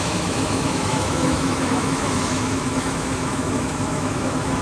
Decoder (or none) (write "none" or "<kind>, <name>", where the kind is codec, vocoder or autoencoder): autoencoder, DAC-VAE